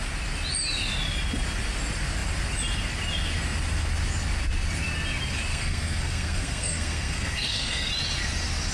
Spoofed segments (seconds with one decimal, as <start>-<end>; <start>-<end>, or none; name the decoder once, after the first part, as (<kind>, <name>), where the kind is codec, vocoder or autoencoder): 5.5-7.9 (codec, SNAC)